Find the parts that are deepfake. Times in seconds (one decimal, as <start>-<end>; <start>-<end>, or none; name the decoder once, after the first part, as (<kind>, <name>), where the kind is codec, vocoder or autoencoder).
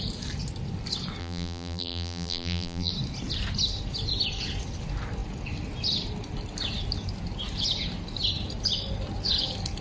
1.2-2.9 (vocoder, BigVGAN v2)